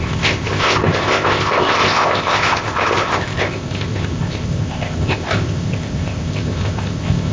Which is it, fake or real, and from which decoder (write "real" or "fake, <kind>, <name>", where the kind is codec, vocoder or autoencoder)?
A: fake, codec, ZipCodec